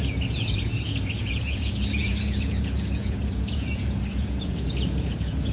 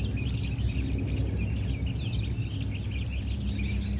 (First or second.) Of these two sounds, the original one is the second